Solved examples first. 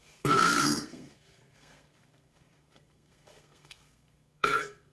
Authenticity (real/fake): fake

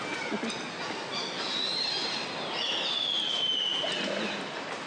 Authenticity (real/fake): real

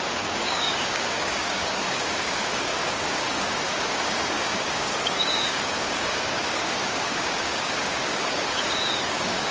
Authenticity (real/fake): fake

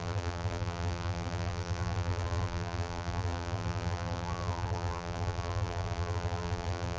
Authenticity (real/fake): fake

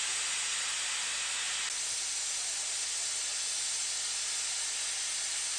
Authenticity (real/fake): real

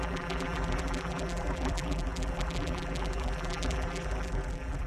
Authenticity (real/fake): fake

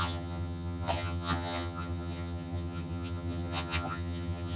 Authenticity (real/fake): fake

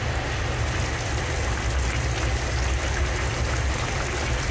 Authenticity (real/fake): real